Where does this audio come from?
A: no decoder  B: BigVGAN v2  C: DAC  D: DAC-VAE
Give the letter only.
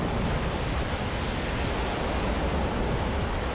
A